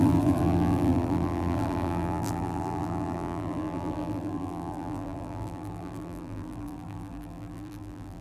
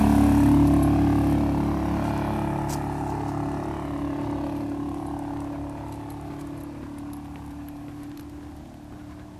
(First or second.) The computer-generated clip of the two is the first